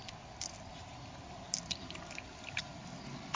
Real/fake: real